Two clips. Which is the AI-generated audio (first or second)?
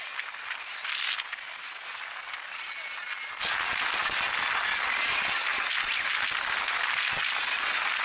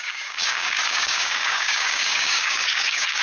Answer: second